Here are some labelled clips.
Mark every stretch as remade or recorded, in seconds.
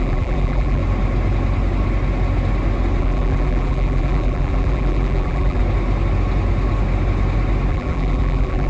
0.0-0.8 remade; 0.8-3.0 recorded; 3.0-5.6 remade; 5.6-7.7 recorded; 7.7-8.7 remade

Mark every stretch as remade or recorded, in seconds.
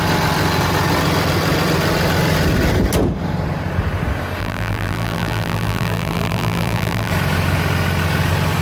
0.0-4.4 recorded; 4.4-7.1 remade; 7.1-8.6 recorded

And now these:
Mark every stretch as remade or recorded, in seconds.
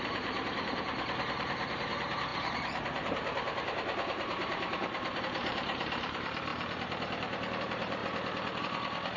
0.0-8.0 remade; 8.0-8.6 recorded; 8.6-9.2 remade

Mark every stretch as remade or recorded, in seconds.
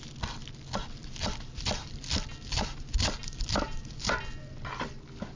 0.0-1.0 recorded; 1.0-4.2 remade; 4.2-5.4 recorded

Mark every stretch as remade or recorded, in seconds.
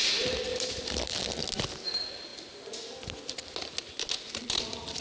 0.0-0.5 recorded; 0.5-1.2 remade; 1.2-5.0 recorded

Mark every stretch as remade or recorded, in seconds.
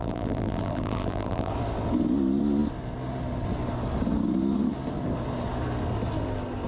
0.0-1.5 remade; 1.5-6.7 recorded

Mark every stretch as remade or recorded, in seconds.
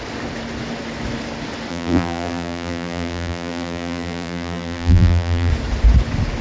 0.0-1.7 recorded; 1.7-5.5 remade; 5.5-6.4 recorded